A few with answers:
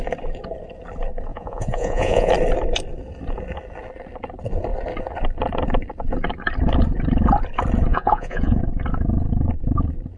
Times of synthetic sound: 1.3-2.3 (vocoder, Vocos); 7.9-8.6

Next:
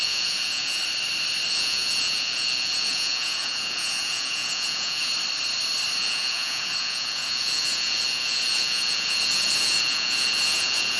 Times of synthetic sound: 0.0-0.8 (vocoder, Vocos); 1.5-5.1; 6.0-11.0

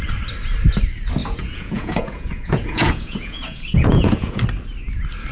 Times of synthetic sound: 1.2-4.4 (vocoder, Vocos)

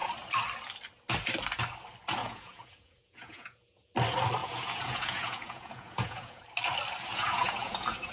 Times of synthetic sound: 2.2-3.9 (vocoder, Vocos); 4.4-6.4; 7.1-8.1

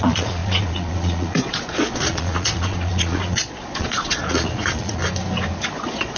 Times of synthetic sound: 0.0-5.0 (vocoder, Vocos); 5.7-6.2

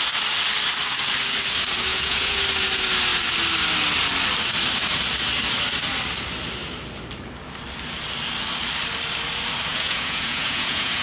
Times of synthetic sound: 1.9-2.4 (vocoder, Vocos); 9.7-11.0

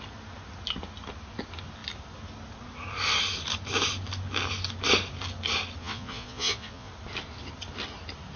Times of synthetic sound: 5.8-6.9 (vocoder, Vocos)